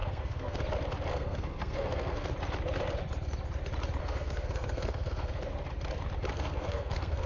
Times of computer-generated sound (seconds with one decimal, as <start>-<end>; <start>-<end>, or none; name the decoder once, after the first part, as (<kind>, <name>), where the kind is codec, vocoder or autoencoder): 0.0-0.6 (codec, SNAC); 1.1-2.3; 4.0-5.4; 6.3-7.3